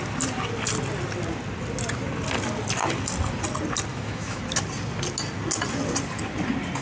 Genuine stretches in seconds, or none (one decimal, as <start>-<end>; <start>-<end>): 0.0-3.9; 4.4-6.8